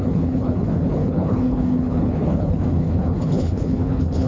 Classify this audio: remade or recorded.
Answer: remade